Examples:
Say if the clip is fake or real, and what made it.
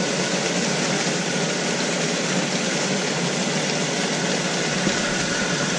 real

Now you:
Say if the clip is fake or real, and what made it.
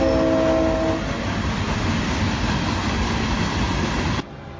real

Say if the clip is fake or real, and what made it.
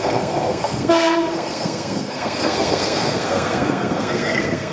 fake, codec, SNAC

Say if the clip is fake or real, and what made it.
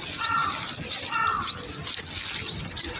real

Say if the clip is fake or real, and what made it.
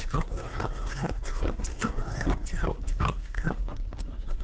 fake, codec, SNAC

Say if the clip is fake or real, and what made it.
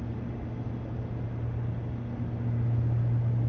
real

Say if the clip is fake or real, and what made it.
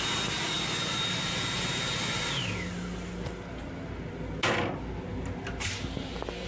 real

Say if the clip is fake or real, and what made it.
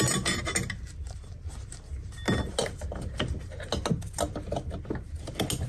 real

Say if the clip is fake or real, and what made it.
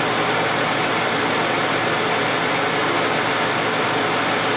real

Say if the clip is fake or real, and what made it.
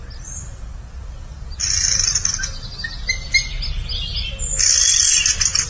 real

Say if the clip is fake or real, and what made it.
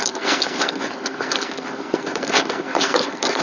fake, codec, SNAC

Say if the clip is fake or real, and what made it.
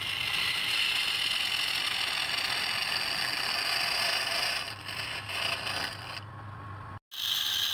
real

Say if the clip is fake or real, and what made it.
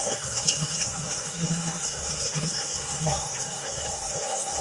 fake, codec, SNAC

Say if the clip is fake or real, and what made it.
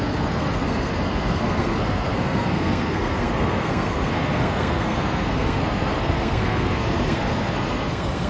fake, codec, SNAC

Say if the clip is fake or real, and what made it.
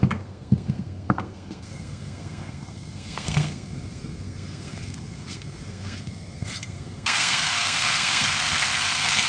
fake, codec, SNAC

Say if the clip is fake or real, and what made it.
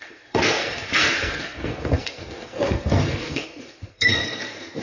fake, codec, SNAC